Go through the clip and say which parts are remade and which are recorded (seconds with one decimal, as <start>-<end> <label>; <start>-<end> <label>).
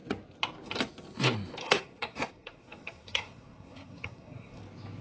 0.0-1.6 recorded; 1.6-4.6 remade; 4.6-5.0 recorded